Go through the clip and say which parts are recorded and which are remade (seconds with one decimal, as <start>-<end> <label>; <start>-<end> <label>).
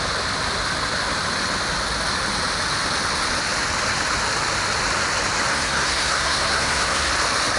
0.0-5.5 recorded; 5.5-7.1 remade; 7.1-7.6 recorded